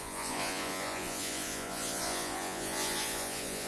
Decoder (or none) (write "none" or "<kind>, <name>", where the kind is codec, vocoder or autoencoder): vocoder, Vocos